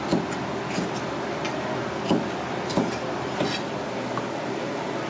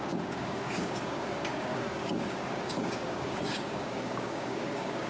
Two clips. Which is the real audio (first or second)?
first